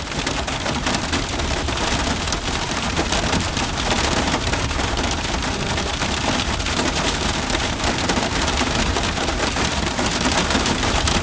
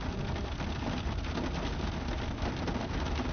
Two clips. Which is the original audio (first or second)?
second